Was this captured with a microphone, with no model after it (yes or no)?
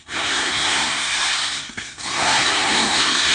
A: no